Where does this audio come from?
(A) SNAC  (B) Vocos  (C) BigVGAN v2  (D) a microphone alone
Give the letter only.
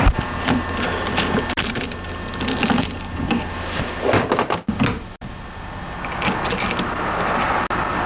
D